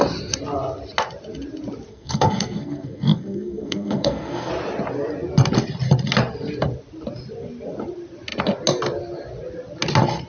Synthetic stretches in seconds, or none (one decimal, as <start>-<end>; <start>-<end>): 1.9-4.5